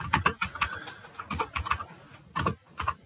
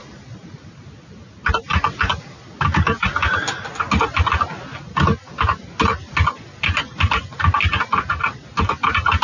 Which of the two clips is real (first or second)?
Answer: second